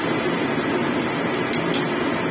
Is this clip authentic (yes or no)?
yes